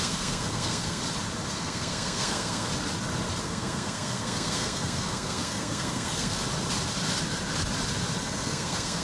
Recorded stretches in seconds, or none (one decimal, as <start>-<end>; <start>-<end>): 1.0-1.5; 2.7-3.4; 6.4-8.2